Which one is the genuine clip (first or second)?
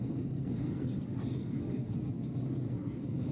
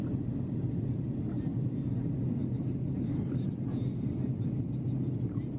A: second